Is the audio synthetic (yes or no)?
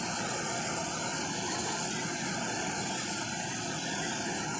no